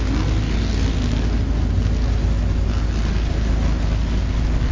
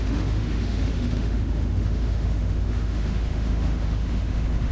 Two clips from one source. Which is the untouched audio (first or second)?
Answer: first